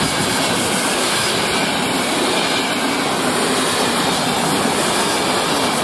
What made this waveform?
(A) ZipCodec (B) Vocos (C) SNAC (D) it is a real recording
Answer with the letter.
D